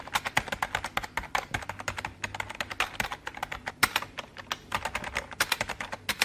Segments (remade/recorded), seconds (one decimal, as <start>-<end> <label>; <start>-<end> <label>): 0.0-6.2 recorded